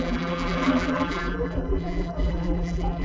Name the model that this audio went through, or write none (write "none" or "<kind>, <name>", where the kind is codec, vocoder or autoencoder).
vocoder, BigVGAN v2